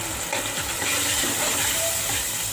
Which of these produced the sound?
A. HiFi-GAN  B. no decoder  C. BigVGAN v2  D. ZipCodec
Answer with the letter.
B